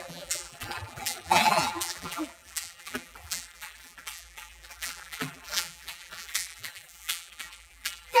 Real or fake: fake